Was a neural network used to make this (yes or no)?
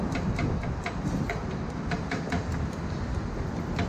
no